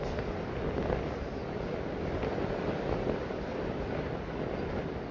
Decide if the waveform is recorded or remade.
recorded